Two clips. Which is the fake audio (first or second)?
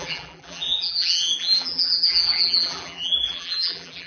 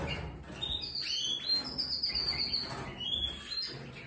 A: first